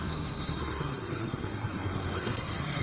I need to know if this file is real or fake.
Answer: fake